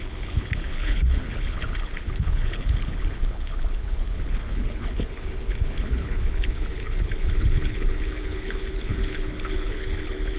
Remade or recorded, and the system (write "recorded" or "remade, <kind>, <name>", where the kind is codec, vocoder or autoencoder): remade, codec, HILCodec